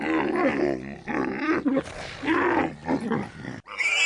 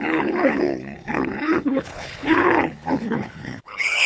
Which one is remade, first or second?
second